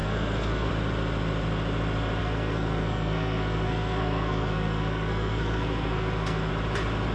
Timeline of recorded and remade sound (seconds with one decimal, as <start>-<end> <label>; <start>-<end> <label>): 0.0-0.7 remade; 0.7-2.2 recorded; 2.2-6.5 remade; 6.5-7.1 recorded